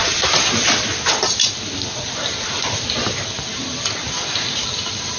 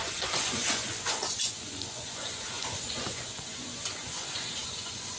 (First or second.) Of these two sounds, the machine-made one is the second